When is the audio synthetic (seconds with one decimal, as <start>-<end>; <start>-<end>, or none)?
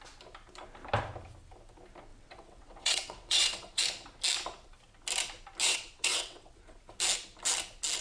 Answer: 2.1-3.8; 5.6-6.8